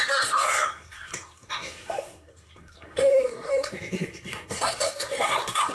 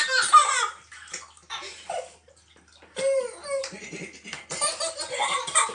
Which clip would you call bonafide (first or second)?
second